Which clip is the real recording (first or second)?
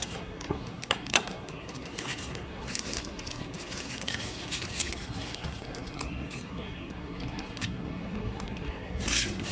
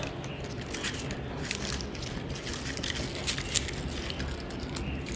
second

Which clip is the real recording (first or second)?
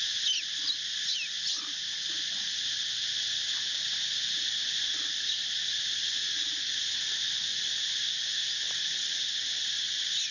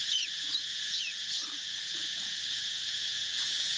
first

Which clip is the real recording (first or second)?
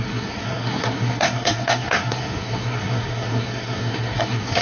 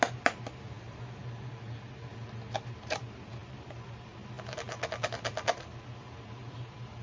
second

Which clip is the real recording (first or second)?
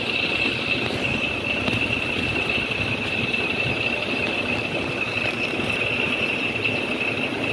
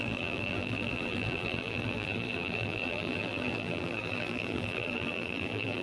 first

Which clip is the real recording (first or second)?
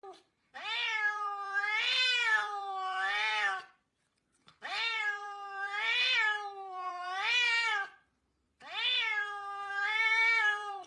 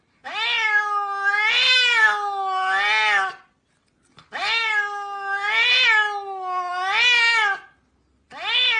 second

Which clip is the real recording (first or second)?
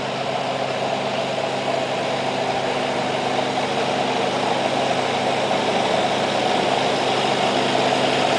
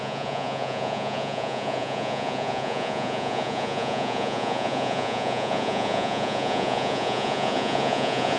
first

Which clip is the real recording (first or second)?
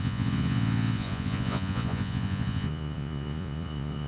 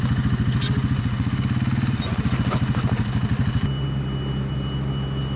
second